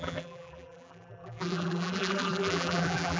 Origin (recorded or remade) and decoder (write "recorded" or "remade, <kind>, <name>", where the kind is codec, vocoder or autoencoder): remade, vocoder, BigVGAN v2